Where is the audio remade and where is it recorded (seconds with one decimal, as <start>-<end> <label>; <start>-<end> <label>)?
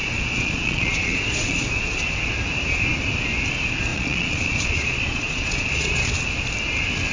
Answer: 0.0-1.8 remade; 1.8-3.9 recorded; 3.9-6.1 remade; 6.1-7.1 recorded